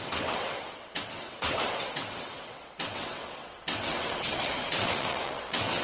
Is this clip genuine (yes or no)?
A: no